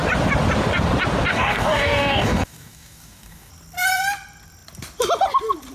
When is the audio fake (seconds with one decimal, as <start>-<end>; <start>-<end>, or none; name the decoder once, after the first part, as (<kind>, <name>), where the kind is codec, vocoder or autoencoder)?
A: 1.3-3.5 (codec, DAC)